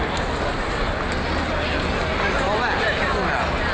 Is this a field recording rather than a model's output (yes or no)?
yes